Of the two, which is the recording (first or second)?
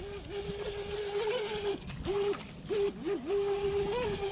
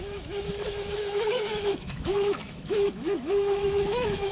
first